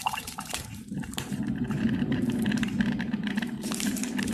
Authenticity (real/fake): fake